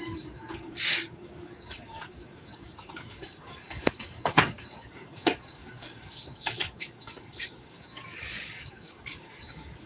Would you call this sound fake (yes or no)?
yes